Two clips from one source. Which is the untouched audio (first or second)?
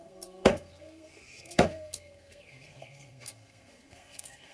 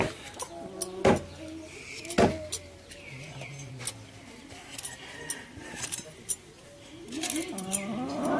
second